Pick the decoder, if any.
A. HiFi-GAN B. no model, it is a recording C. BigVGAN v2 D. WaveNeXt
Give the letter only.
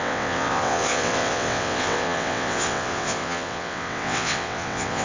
D